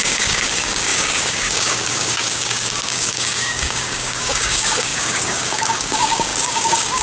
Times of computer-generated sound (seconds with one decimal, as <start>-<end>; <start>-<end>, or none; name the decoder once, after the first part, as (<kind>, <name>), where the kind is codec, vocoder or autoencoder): 0.0-7.0 (codec, DAC)